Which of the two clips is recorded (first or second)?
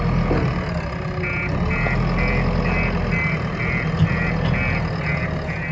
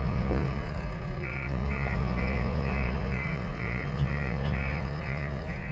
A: first